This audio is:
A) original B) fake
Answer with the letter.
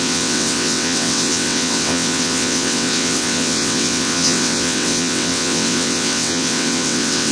B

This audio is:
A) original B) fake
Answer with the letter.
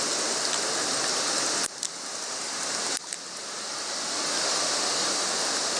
A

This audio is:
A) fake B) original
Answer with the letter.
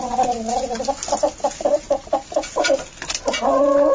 B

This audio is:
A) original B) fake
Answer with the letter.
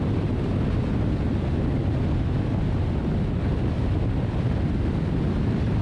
A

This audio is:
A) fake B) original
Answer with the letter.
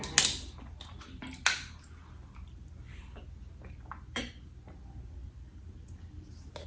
B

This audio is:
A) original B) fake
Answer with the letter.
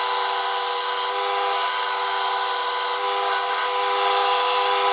A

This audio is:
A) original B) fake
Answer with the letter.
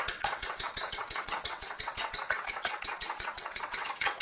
B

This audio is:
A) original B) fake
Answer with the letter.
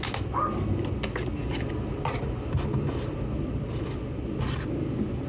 A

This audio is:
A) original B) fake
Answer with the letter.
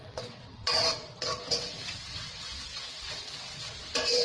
B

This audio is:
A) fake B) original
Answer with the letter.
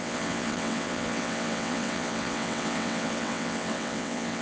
A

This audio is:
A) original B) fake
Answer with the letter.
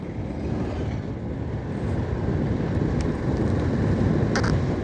A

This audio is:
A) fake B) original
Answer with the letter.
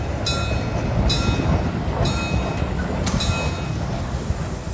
B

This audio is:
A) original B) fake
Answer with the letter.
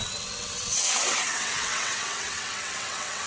B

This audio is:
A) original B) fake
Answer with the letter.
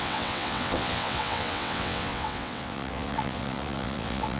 B